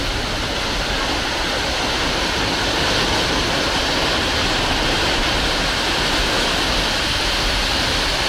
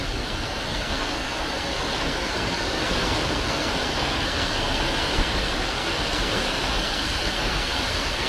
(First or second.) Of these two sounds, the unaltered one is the first